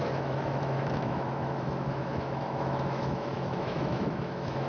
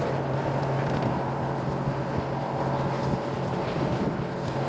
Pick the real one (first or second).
second